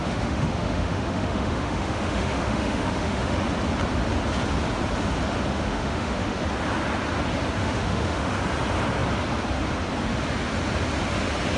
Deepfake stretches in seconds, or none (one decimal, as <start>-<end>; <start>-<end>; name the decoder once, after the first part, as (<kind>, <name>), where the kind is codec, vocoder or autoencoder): 0.0-3.4 (autoencoder, DAC-VAE); 5.5-6.4; 7.6-8.3